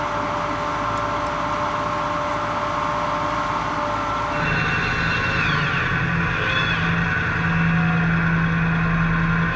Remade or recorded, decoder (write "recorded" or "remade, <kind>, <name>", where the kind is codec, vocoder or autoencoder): recorded